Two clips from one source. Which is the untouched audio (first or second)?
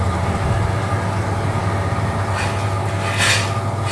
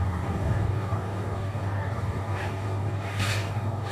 first